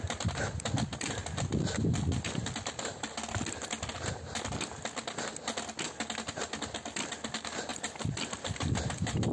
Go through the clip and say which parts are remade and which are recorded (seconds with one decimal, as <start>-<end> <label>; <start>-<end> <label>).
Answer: 0.0-9.3 recorded